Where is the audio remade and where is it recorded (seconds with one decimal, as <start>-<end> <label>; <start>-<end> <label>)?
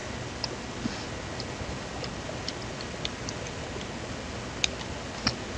0.0-5.6 recorded